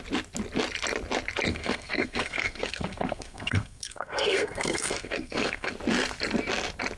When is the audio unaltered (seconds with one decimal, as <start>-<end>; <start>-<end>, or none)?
0.0-1.5; 5.7-7.0

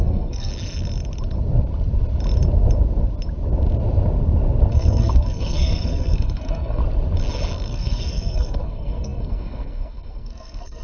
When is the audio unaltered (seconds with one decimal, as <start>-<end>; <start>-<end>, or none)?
0.5-4.7; 6.8-7.7

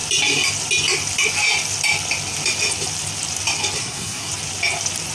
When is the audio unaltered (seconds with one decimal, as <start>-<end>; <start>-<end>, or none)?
0.0-3.8; 4.3-5.1

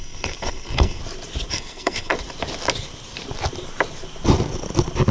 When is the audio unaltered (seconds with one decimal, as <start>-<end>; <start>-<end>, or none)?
1.0-1.5; 2.1-5.1

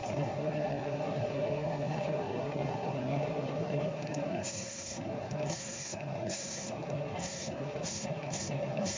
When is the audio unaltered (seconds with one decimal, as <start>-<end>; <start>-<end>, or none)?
none

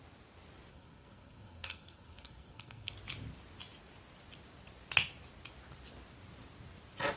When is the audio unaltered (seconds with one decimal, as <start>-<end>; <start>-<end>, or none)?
0.0-0.7; 2.9-7.2